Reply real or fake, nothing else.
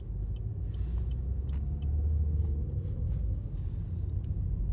real